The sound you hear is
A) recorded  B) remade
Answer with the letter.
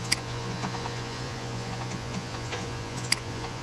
B